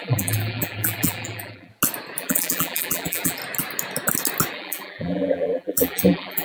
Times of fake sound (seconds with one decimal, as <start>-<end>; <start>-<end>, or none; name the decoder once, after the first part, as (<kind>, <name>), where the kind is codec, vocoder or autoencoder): 0.0-1.7 (vocoder, BigVGAN v2); 2.2-3.4; 4.5-6.4